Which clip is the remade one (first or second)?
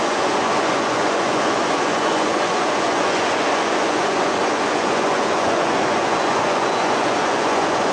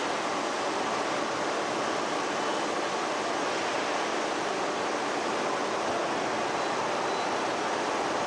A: first